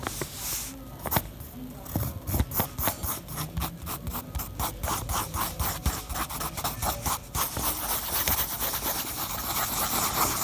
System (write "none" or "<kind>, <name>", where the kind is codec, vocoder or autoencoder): none